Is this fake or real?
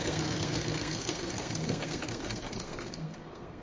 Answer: fake